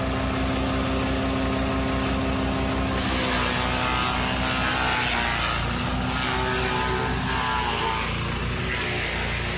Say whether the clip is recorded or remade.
recorded